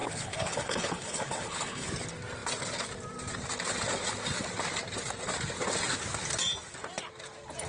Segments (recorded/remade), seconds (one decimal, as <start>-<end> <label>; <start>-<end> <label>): 0.0-1.9 remade; 1.9-7.7 recorded